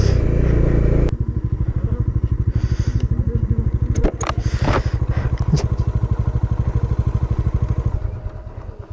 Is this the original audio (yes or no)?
yes